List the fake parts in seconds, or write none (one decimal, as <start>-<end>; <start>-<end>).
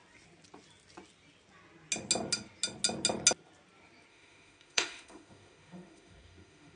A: 4.1-6.8